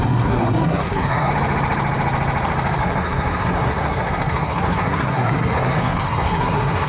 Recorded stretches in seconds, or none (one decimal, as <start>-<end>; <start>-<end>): 1.3-2.8